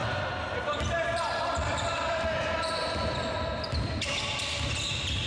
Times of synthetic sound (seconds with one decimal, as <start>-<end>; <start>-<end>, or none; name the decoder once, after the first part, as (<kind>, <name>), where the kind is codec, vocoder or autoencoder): 0.0-3.2 (vocoder, BigVGAN v2); 3.7-5.3